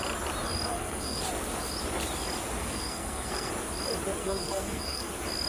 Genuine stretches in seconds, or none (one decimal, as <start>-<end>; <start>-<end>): 0.0-0.7; 1.2-2.6; 3.5-4.2; 5.1-5.5